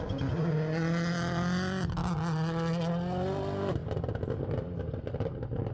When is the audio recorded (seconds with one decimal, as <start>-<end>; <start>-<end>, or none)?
0.0-5.7